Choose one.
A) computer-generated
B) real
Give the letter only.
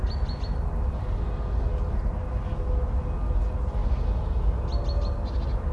B